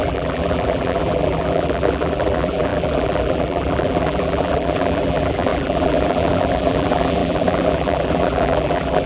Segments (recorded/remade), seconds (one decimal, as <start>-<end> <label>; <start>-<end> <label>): 0.0-9.1 remade